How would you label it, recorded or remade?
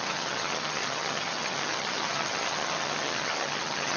remade